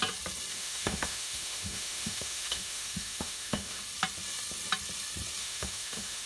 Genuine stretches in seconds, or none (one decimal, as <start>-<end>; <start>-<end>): 0.0-0.5; 3.8-5.4

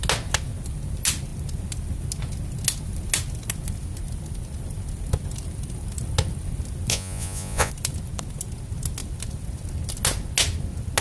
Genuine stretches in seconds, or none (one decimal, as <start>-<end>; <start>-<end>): 0.0-6.9; 7.7-11.0

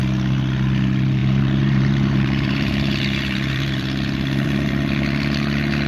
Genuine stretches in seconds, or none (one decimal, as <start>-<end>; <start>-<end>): 0.0-1.2; 4.7-5.9